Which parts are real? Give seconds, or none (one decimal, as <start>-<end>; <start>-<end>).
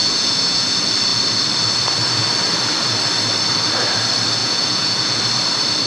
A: 0.7-4.4; 5.2-5.9